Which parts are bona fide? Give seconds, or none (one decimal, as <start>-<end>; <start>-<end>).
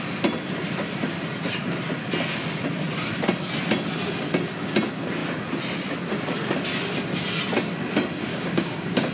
0.0-8.3